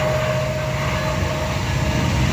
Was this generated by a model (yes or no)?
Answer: no